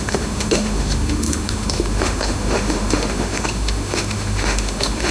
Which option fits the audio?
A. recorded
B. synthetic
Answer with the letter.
B